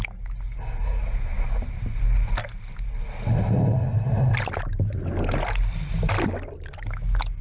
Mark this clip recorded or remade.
recorded